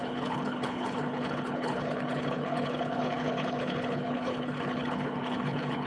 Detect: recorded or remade remade